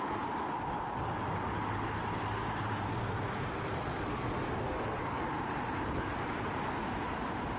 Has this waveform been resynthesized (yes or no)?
no